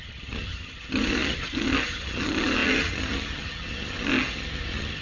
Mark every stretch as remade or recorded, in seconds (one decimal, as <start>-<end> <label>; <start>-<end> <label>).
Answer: 0.0-5.0 remade